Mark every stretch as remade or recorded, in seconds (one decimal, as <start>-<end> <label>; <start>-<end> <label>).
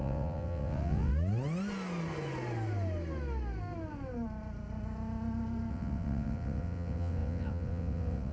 0.0-1.1 remade; 1.1-5.7 recorded; 5.7-8.3 remade